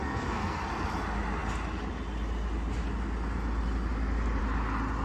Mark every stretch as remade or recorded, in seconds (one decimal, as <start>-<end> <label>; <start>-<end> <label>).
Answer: 0.0-0.6 remade; 0.6-5.0 recorded